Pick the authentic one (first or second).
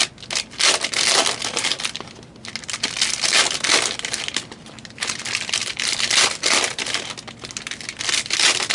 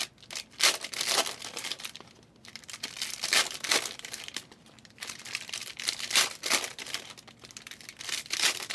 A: first